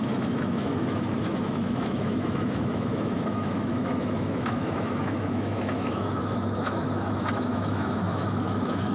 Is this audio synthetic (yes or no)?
yes